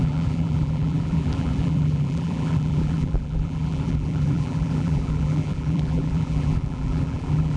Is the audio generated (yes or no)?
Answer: yes